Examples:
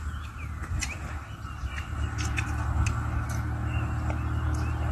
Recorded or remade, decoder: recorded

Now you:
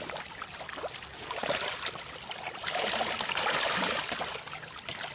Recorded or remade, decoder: remade, vocoder, BigVGAN v2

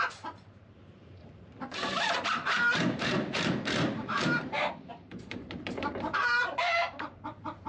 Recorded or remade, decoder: remade, vocoder, BigVGAN v2